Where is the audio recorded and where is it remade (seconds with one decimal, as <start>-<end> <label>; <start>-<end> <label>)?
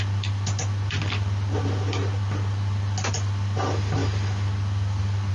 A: 0.0-5.3 recorded